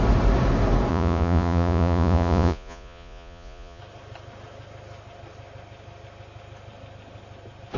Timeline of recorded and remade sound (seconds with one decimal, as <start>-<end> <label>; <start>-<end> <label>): 0.0-0.9 recorded; 0.9-3.8 remade; 3.8-7.8 recorded